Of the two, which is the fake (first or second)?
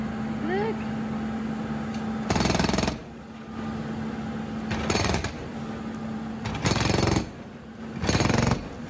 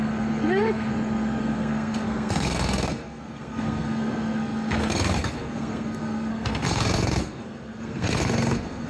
second